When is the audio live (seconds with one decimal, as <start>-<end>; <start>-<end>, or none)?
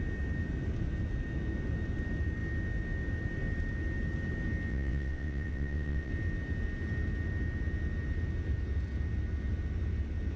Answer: 0.0-4.7; 6.1-10.4